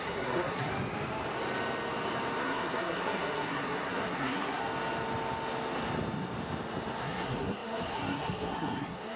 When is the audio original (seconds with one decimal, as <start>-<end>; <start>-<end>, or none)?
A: 0.7-2.4; 4.6-7.0